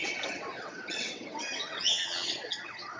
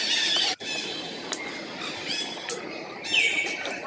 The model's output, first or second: first